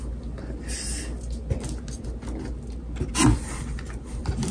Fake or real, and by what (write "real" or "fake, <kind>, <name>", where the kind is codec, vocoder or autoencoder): real